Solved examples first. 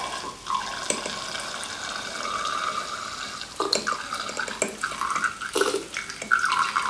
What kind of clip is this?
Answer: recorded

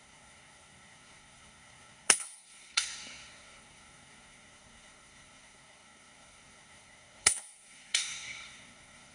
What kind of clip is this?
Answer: remade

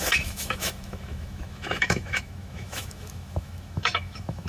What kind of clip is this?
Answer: remade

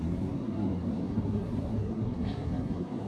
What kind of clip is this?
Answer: remade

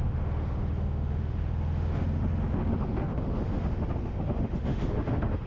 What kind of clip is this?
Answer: remade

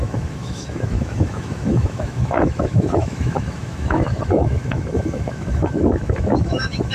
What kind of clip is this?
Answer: remade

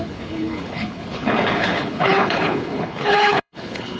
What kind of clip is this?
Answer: remade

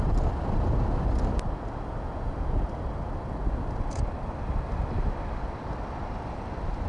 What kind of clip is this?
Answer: recorded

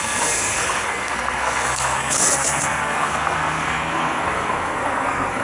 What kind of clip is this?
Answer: remade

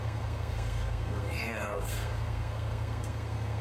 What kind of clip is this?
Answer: remade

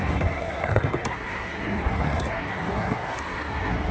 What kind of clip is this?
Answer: remade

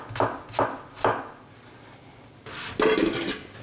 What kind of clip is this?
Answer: recorded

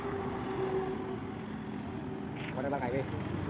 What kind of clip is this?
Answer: recorded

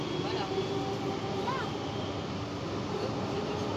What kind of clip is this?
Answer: recorded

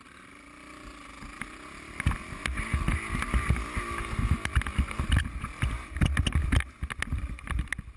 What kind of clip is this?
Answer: recorded